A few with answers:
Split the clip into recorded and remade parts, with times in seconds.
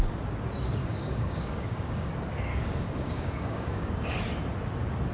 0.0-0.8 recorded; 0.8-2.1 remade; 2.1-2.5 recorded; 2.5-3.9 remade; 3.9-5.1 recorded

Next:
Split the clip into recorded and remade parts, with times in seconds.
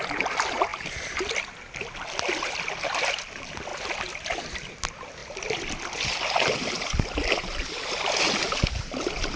0.0-9.4 recorded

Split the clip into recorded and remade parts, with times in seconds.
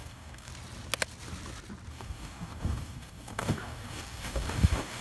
0.0-0.5 remade; 0.5-1.9 recorded; 1.9-5.0 remade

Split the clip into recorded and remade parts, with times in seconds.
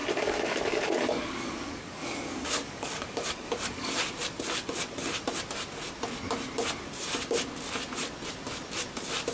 0.0-3.9 remade; 3.9-9.3 recorded